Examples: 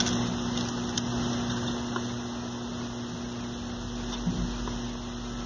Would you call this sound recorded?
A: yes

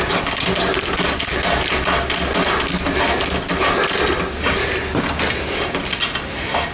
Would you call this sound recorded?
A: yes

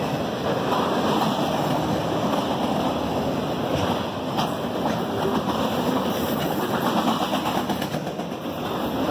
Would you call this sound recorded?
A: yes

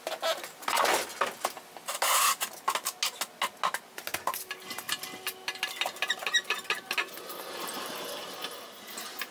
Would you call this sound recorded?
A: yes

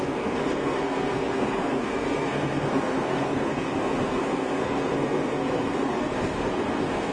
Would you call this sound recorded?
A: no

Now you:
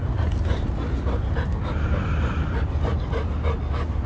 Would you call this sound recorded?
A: yes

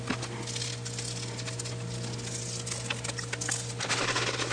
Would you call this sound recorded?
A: yes